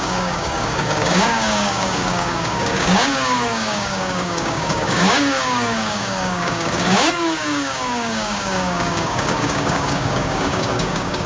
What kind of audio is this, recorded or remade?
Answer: remade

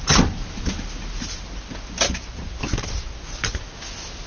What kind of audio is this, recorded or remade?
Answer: recorded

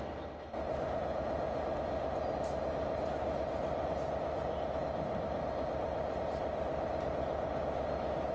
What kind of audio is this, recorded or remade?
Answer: recorded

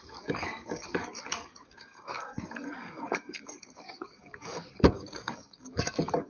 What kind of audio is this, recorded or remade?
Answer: remade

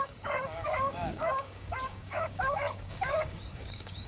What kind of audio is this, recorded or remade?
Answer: remade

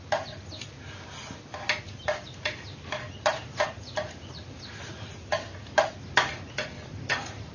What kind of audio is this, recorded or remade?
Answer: recorded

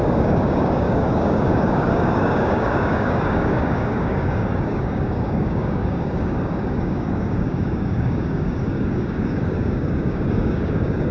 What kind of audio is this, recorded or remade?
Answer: remade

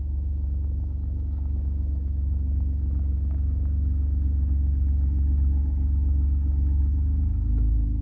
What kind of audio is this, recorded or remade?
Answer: remade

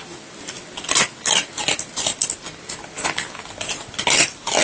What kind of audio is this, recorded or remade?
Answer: recorded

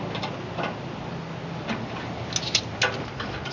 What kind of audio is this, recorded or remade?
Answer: recorded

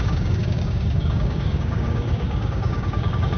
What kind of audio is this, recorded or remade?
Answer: remade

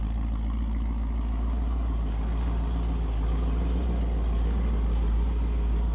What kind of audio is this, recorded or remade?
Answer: recorded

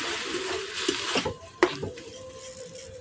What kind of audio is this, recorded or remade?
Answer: recorded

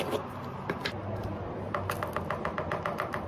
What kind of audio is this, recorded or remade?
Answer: recorded